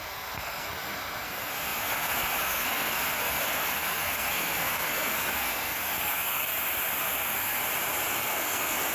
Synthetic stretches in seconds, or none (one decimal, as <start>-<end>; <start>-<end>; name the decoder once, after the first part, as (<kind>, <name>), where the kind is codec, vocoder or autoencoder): 0.0-6.5 (codec, SNAC); 7.0-7.6; 8.1-8.9